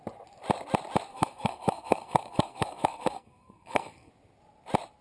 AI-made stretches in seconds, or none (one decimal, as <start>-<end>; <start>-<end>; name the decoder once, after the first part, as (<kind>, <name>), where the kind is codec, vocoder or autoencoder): 1.1-4.1 (codec, SNAC)